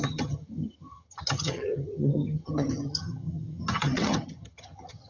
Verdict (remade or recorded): remade